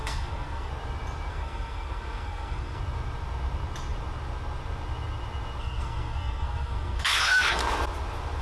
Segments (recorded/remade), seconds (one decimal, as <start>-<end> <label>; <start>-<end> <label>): 0.0-0.7 remade; 0.7-1.3 recorded; 1.3-2.8 remade; 2.8-5.6 recorded; 5.6-7.6 remade; 7.6-8.4 recorded